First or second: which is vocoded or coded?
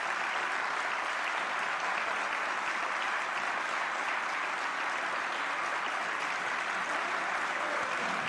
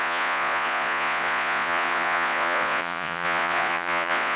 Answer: second